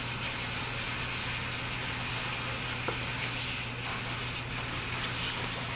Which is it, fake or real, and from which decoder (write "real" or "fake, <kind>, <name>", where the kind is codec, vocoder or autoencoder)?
real